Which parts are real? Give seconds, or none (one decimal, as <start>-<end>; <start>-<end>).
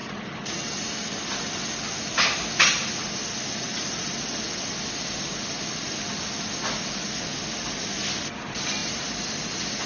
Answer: 0.0-9.9